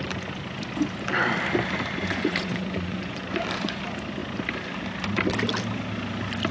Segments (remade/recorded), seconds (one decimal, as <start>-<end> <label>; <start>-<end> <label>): 0.0-2.0 recorded; 2.0-3.8 remade; 3.8-6.5 recorded